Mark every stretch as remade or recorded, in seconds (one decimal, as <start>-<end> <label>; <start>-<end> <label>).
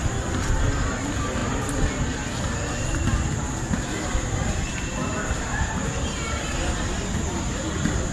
0.0-8.1 recorded